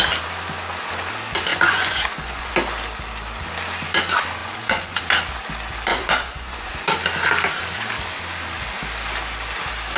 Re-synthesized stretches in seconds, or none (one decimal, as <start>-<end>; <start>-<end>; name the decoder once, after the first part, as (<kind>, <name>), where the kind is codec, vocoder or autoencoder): 1.5-2.5 (vocoder, Vocos); 4.4-5.0; 5.9-6.7